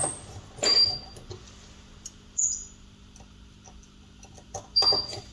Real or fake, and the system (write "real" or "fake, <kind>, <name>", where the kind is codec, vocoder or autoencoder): real